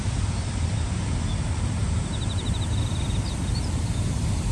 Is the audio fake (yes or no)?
no